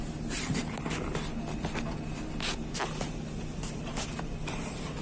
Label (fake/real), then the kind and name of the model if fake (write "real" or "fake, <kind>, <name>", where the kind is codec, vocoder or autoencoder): real